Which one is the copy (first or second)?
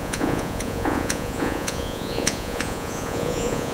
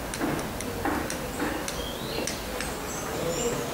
first